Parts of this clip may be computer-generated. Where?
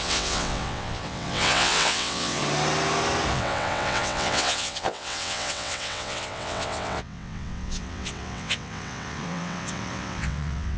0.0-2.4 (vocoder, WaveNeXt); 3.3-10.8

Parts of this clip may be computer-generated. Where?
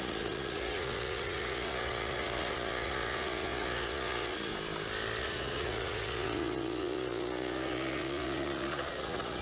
0.0-4.5 (vocoder, Vocos); 5.2-9.4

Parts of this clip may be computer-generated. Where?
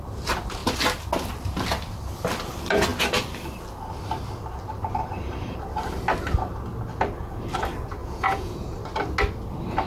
8.0-8.7 (vocoder, Vocos)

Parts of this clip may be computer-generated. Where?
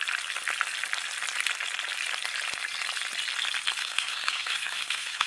3.8-5.3 (codec, SNAC)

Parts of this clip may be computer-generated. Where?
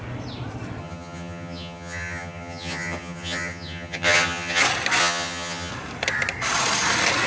0.8-4.6 (vocoder, HiFi-GAN); 5.0-5.7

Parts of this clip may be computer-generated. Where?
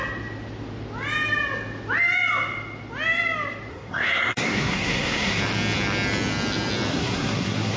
3.7-5.4 (codec, SNAC); 6.9-7.8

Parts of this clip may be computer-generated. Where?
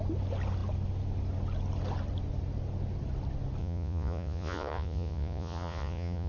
3.6-6.3 (vocoder, Vocos)